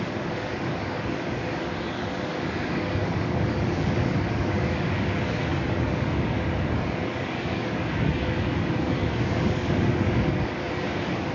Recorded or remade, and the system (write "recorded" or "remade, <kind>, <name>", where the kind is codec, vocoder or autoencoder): remade, codec, DAC